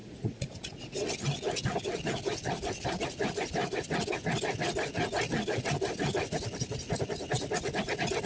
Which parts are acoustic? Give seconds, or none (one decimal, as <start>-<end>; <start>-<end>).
1.1-8.3